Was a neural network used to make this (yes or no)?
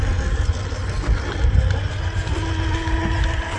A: no